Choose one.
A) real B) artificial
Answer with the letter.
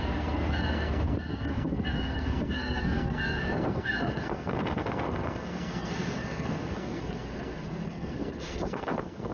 B